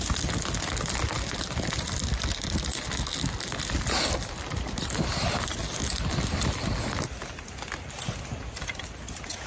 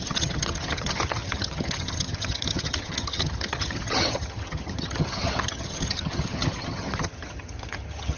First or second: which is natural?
first